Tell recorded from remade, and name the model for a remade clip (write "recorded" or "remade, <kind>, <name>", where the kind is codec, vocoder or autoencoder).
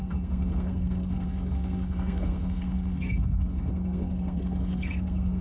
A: remade, codec, SNAC